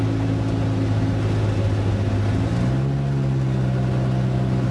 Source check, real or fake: real